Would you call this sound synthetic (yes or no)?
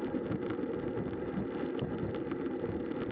no